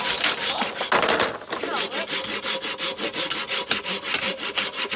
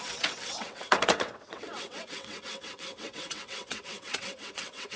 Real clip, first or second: first